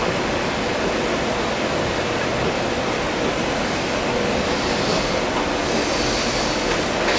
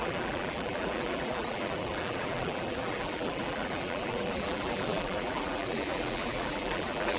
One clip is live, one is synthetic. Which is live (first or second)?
first